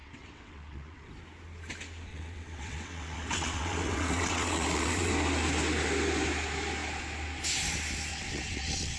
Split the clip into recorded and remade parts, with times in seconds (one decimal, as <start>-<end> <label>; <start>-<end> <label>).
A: 0.0-1.1 remade; 1.1-2.1 recorded; 2.1-5.1 remade; 5.1-8.1 recorded; 8.1-9.0 remade

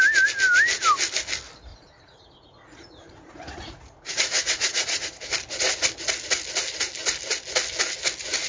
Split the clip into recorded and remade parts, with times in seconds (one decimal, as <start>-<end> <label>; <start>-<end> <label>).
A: 0.0-1.7 recorded; 1.7-5.2 remade; 5.2-8.5 recorded

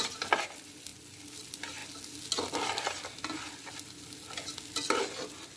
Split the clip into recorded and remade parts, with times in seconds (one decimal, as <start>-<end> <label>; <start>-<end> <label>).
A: 0.0-5.6 recorded

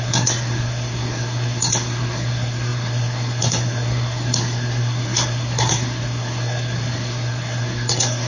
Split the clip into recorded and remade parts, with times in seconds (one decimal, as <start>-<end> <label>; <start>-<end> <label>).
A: 0.0-8.3 remade

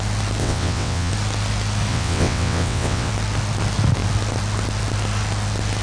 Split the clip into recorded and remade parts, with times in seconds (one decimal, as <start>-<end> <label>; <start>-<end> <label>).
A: 0.0-0.4 recorded; 0.4-1.1 remade; 1.1-1.9 recorded; 1.9-3.1 remade; 3.1-5.8 recorded

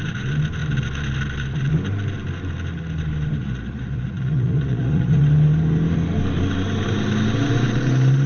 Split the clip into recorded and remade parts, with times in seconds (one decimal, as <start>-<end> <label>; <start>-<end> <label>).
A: 0.0-3.4 recorded; 3.4-5.2 remade; 5.2-8.3 recorded

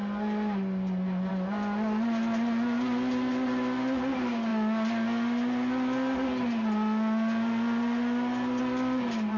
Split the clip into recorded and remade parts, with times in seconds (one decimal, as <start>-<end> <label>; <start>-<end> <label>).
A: 0.0-9.4 recorded

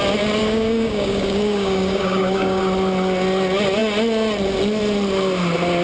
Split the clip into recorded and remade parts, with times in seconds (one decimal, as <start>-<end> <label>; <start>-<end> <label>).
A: 0.0-0.4 recorded; 0.4-2.6 remade; 2.6-5.8 recorded